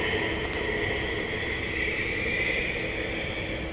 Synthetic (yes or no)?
no